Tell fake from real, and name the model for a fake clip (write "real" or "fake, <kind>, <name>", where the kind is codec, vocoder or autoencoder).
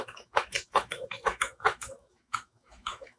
fake, autoencoder, DAC-VAE